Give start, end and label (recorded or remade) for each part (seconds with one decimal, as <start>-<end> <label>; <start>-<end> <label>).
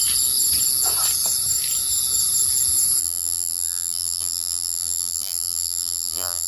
0.0-3.0 recorded; 3.0-6.5 remade